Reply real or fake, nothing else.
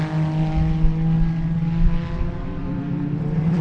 real